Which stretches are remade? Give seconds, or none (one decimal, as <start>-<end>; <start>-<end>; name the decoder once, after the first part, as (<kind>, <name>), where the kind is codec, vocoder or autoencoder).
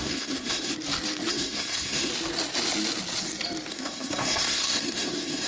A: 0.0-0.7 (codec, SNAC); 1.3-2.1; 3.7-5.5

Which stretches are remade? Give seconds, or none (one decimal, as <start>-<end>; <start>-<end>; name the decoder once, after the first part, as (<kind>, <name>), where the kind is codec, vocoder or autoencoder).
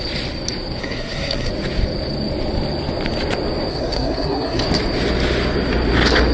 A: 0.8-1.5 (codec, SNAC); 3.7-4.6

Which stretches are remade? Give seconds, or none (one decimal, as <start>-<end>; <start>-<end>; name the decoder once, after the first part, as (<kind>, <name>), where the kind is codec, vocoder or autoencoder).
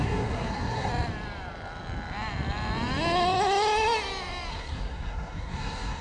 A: 0.0-0.9 (codec, SNAC); 4.5-6.0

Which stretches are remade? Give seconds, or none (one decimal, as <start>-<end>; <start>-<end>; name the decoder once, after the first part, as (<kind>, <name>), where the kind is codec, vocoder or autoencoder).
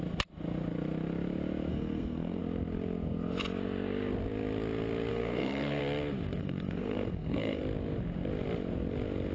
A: 1.7-2.4 (codec, SNAC); 5.1-5.8; 6.4-7.6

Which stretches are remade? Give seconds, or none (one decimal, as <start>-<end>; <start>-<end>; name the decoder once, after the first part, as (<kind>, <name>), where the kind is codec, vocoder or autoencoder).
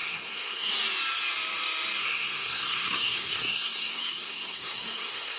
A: 0.0-0.7 (codec, SNAC); 2.0-5.4